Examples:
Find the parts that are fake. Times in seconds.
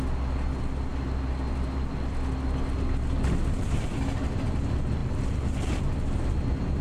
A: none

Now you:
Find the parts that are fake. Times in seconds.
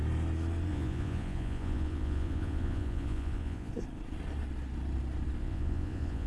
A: 0.7-3.7 (vocoder, Vocos); 5.4-6.3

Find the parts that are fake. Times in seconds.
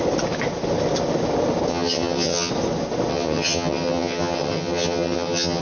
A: 1.7-2.5 (vocoder, HiFi-GAN); 3.1-5.6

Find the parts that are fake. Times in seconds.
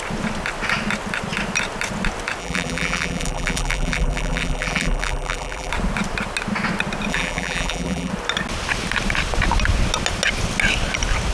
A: 2.4-5.7 (vocoder, BigVGAN v2); 7.1-8.1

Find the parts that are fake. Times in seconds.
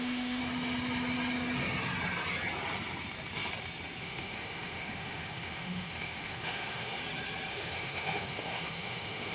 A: 0.0-0.4 (autoencoder, DAC-VAE); 4.0-7.0; 7.5-9.3